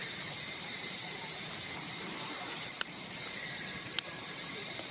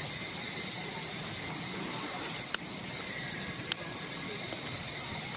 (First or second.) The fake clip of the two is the first